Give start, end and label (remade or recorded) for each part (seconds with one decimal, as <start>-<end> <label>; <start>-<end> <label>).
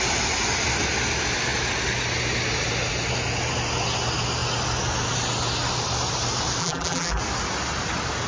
0.0-6.6 recorded; 6.6-7.2 remade; 7.2-8.3 recorded